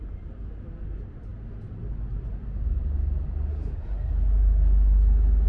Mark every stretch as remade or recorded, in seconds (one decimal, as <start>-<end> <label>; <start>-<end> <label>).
0.0-3.5 recorded; 3.5-4.1 remade; 4.1-5.5 recorded